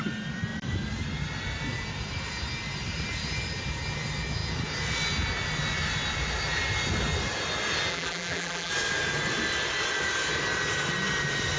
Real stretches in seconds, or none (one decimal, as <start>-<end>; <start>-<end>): 0.0-7.9; 8.7-11.6